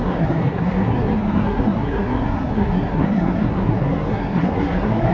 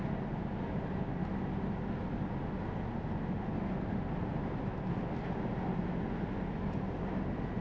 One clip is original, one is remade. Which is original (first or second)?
second